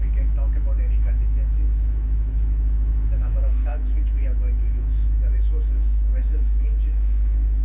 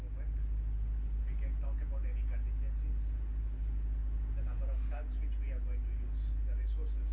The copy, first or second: first